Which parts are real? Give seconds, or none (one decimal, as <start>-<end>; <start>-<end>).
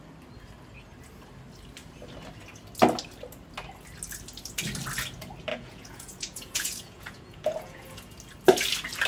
0.0-5.5; 8.1-9.1